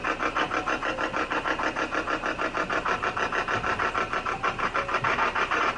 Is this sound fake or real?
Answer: real